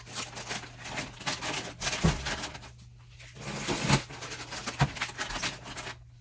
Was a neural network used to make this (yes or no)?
no